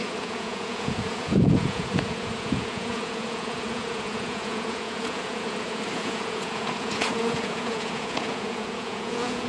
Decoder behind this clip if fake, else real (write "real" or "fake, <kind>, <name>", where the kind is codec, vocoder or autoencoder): fake, vocoder, Vocos